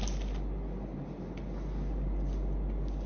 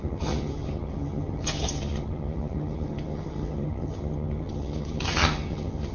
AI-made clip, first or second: second